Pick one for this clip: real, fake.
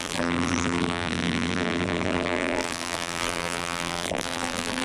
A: fake